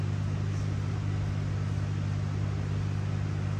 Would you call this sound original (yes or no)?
yes